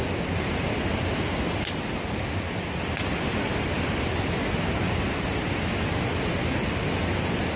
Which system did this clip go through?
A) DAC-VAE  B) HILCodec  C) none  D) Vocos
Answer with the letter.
C